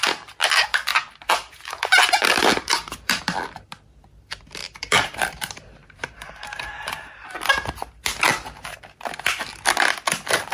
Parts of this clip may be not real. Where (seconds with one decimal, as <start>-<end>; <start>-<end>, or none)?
0.9-3.2; 4.6-7.3